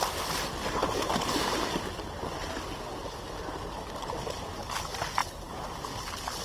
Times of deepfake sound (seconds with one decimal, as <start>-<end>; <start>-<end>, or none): none